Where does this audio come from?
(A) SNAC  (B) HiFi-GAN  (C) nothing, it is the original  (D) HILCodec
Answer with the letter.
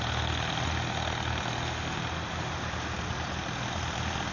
C